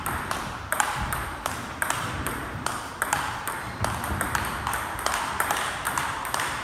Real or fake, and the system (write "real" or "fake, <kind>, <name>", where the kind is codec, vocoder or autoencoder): fake, vocoder, BigVGAN v2